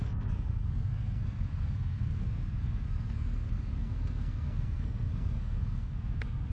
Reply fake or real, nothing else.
fake